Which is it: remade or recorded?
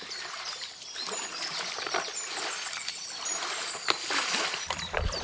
remade